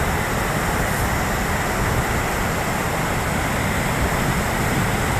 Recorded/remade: recorded